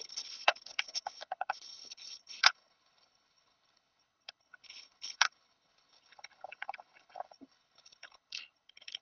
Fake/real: fake